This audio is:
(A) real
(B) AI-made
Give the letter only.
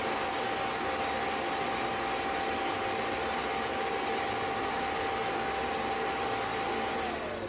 A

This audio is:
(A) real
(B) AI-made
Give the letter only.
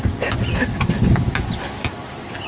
A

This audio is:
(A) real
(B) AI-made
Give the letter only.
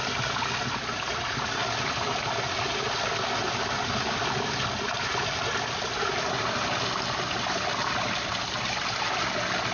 A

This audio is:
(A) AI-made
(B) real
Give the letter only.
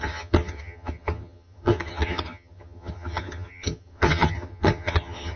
A